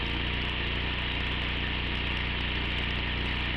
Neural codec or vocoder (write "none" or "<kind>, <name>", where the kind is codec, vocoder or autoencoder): none